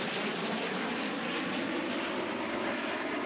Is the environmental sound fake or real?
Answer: real